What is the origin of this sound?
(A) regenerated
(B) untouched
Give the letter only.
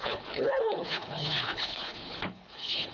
A